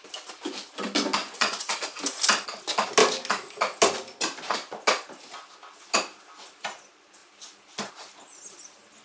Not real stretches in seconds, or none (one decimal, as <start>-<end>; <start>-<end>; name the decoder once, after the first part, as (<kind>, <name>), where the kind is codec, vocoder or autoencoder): 1.2-1.7 (vocoder, Vocos)